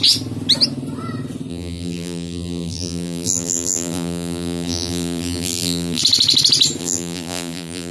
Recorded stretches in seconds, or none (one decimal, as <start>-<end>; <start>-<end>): 0.0-1.5; 6.0-6.8